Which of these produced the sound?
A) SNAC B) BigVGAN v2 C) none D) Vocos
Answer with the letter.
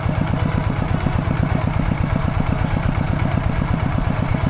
B